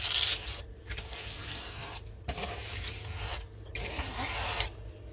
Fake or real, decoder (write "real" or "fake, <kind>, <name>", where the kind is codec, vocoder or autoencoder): real